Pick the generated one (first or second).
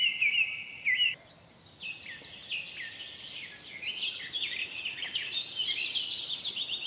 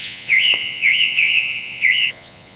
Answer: second